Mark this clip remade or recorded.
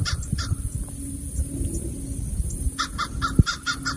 recorded